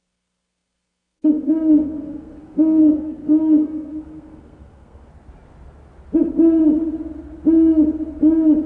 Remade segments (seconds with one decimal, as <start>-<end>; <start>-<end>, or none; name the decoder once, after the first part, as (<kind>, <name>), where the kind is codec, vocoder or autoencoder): 0.0-5.1 (codec, SNAC)